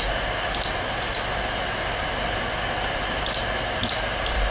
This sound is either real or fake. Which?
real